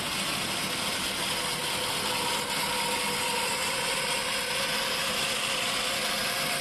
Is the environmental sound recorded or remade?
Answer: recorded